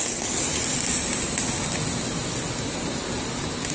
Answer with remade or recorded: recorded